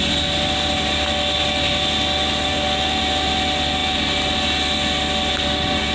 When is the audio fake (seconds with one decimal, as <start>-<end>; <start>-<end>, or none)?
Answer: none